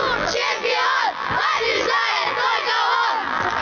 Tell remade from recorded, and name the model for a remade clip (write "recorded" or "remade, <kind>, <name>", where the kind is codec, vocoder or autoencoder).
remade, vocoder, BigVGAN v2